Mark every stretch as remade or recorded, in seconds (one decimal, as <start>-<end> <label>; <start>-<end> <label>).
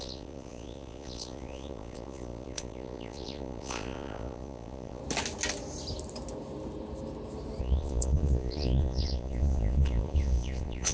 0.0-5.0 remade; 5.0-7.6 recorded; 7.6-10.9 remade